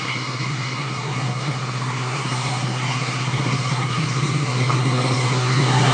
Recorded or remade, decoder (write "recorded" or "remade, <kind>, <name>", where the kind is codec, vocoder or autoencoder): remade, codec, SNAC